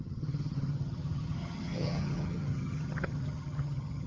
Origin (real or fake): fake